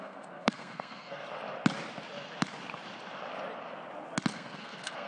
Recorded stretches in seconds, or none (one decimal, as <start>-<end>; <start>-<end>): 1.2-4.3